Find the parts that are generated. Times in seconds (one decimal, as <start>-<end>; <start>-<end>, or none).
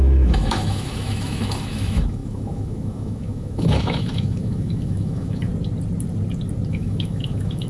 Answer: 0.0-5.5; 6.7-7.7